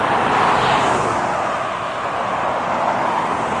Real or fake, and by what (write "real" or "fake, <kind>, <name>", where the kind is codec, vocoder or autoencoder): real